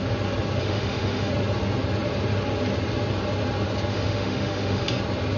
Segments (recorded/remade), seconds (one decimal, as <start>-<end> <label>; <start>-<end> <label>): 0.0-0.6 recorded; 0.6-1.3 remade; 1.3-3.9 recorded; 3.9-5.0 remade; 5.0-5.4 recorded